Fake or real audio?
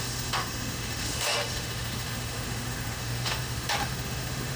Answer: fake